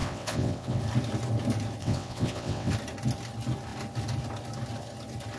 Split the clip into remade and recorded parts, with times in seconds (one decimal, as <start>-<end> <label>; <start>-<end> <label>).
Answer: 0.0-0.8 remade; 0.8-1.8 recorded; 1.8-2.7 remade; 2.7-5.4 recorded